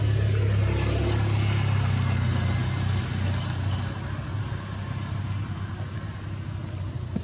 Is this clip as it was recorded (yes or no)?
yes